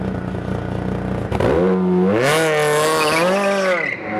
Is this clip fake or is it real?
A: real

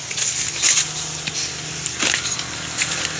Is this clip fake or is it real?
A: real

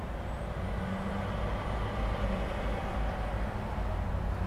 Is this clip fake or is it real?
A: real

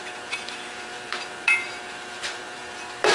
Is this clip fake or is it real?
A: fake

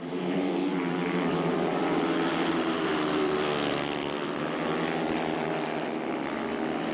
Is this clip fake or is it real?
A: fake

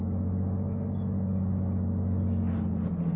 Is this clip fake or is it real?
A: real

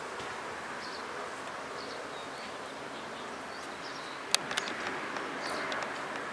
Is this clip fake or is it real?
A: real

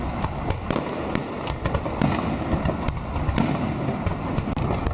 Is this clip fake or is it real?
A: real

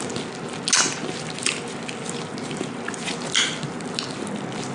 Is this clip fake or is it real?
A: real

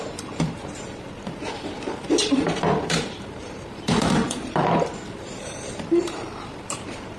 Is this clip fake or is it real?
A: fake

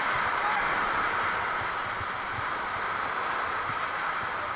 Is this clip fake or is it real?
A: real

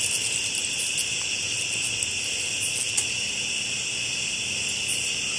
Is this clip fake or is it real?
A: real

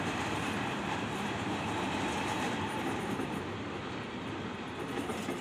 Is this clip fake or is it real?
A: fake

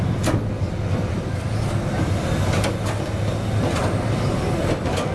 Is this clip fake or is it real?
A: real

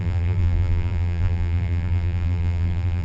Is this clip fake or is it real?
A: fake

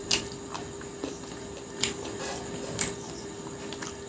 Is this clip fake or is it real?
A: real